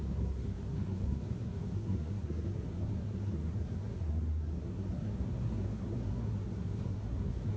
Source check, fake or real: fake